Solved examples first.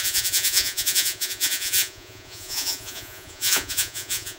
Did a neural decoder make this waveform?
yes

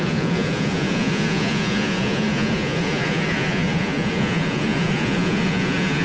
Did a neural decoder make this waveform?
yes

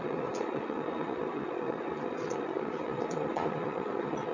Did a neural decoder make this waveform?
yes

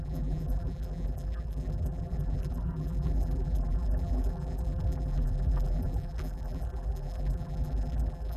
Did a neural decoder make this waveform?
yes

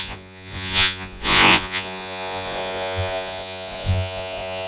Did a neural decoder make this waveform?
yes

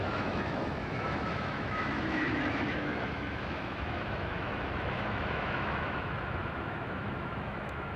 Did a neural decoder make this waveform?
yes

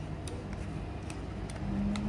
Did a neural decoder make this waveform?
no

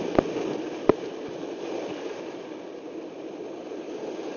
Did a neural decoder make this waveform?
no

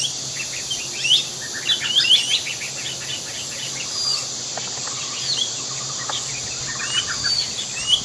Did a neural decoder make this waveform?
no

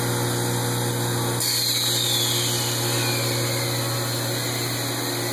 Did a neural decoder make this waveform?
no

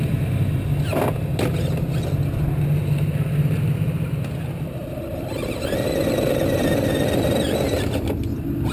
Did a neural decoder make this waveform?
no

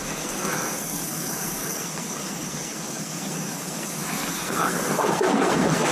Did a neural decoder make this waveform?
yes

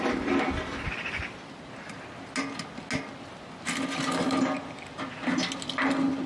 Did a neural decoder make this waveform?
no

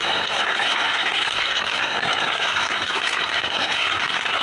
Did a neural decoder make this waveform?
yes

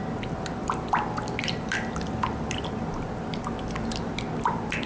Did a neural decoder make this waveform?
no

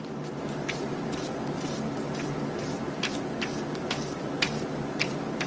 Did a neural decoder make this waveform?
no